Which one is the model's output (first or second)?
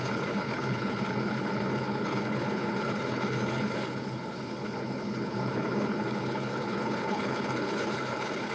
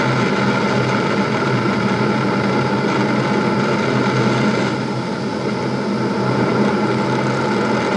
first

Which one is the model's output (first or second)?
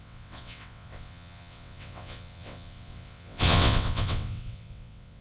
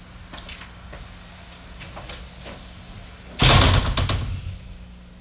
first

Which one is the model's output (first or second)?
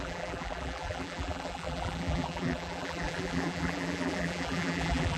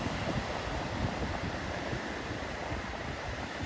first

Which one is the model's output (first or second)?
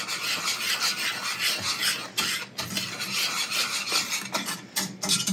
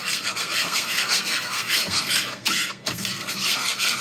second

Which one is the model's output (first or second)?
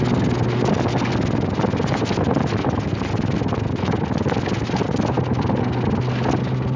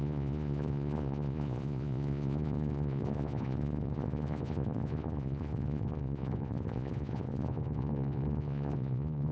second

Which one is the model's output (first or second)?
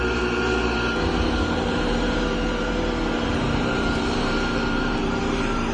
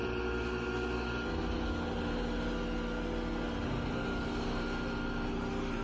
first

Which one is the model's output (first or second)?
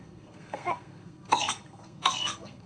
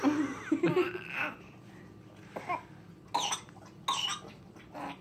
first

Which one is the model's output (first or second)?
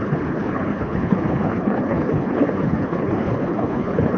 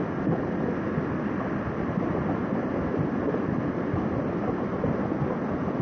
first